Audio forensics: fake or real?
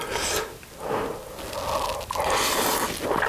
real